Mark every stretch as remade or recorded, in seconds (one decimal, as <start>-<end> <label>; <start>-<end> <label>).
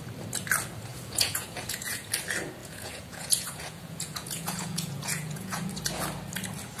0.0-0.9 recorded; 0.9-2.1 remade; 2.1-2.6 recorded; 2.6-5.7 remade; 5.7-6.8 recorded